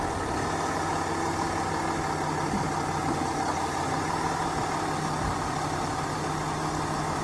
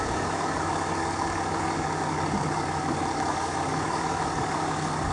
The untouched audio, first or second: first